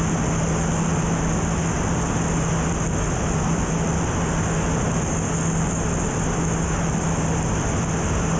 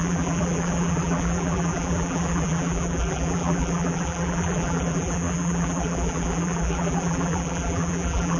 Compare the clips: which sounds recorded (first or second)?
first